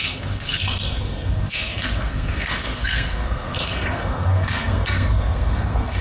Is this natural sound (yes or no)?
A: no